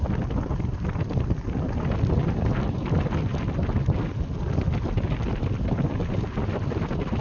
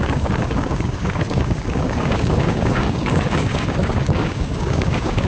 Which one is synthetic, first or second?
second